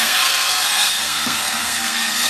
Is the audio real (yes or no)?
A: no